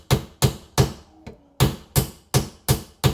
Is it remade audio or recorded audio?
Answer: recorded